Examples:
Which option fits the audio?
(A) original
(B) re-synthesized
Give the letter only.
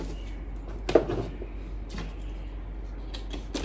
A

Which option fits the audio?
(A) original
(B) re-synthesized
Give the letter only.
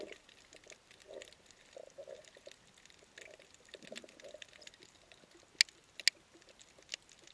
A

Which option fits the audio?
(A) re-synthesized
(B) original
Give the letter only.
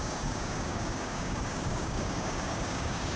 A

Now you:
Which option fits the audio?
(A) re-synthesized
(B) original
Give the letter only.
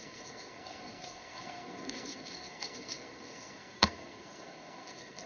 A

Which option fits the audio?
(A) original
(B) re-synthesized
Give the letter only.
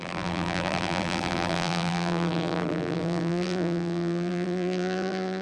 B